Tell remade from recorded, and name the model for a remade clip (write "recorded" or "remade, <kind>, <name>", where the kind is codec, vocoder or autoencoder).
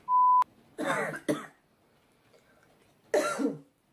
recorded